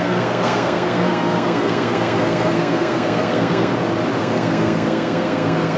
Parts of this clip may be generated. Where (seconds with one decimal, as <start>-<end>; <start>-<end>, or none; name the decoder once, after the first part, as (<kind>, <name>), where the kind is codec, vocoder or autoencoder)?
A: 0.0-3.7 (codec, SNAC); 4.2-5.8